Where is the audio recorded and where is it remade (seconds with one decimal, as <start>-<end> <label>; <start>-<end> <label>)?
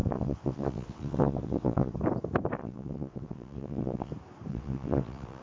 0.0-1.9 remade; 1.9-2.6 recorded; 2.6-4.1 remade; 4.1-4.5 recorded; 4.5-5.4 remade